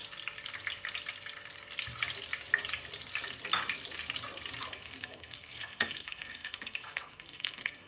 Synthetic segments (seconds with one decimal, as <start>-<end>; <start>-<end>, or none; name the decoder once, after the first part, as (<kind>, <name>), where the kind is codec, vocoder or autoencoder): 4.7-7.9 (codec, SNAC)